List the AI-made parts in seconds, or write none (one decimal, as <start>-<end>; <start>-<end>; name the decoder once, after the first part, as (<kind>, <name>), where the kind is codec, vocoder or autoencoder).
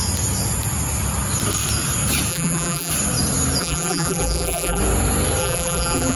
2.3-2.9 (vocoder, BigVGAN v2); 3.6-4.8; 5.4-6.2